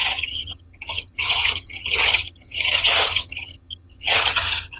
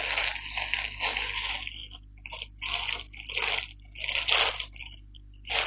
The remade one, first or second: first